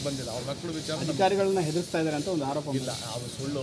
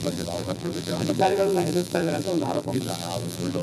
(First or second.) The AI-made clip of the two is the second